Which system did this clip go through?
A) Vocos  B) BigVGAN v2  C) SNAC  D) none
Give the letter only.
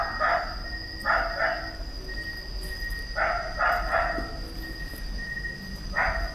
D